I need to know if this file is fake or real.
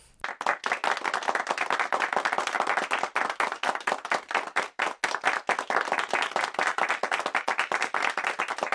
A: real